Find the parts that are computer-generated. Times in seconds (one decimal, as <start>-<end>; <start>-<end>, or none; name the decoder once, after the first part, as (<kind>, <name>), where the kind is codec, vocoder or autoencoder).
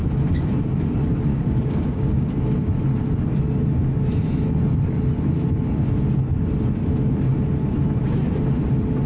1.3-2.3 (codec, DAC)